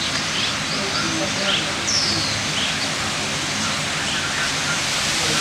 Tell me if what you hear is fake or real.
real